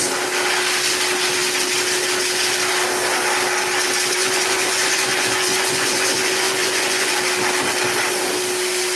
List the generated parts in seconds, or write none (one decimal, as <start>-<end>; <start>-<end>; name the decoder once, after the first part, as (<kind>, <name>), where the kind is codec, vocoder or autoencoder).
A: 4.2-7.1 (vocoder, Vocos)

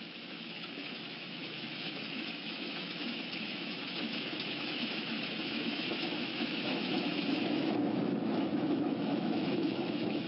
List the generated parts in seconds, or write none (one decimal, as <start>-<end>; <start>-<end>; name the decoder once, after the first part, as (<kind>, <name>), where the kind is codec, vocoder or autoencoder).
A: 0.0-10.3 (autoencoder, DAC-VAE)

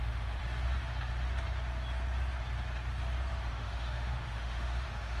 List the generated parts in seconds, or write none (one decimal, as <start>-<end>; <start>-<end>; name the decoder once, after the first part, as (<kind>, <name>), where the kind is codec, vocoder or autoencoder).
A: 0.0-0.4 (autoencoder, DAC-VAE); 3.5-5.2

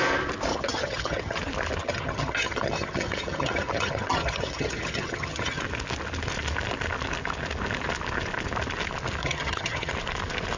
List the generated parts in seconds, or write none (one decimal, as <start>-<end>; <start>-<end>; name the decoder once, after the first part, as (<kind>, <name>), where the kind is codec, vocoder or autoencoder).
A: 0.5-1.4 (vocoder, HiFi-GAN); 1.8-5.6; 9.2-9.9